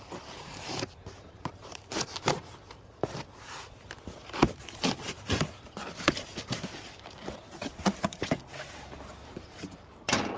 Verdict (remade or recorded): remade